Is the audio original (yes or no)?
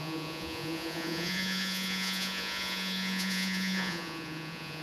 no